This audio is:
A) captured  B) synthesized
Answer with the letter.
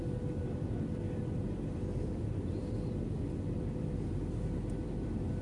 A